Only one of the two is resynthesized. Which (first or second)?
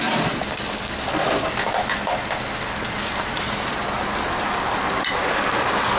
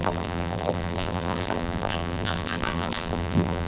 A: second